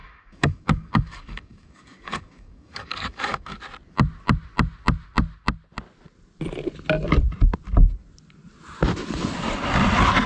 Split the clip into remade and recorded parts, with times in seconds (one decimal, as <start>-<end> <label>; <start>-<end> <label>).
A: 0.0-3.6 remade; 3.6-10.3 recorded